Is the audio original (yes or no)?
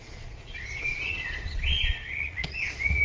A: no